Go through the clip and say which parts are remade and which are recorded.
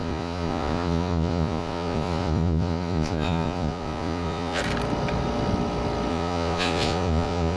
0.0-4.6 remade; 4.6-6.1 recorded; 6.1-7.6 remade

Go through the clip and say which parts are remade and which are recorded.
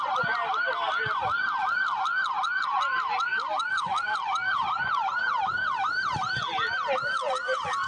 0.0-7.9 recorded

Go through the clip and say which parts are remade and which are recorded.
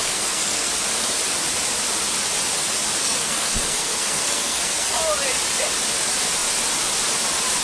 0.0-0.7 remade; 0.7-3.0 recorded; 3.0-5.0 remade; 5.0-7.6 recorded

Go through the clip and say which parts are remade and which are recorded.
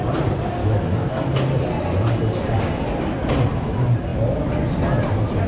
0.0-0.6 recorded; 0.6-1.3 remade; 1.3-5.5 recorded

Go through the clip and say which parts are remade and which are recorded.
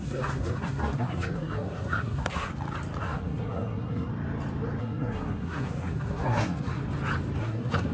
0.0-2.5 remade; 2.5-3.0 recorded; 3.0-4.1 remade; 4.1-4.8 recorded; 4.8-6.8 remade; 6.8-7.4 recorded; 7.4-7.9 remade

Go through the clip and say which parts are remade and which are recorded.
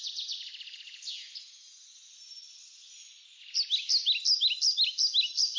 0.0-5.6 recorded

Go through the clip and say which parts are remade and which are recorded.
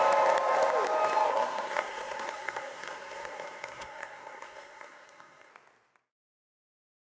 0.0-1.3 recorded; 1.3-5.5 remade; 5.5-7.2 recorded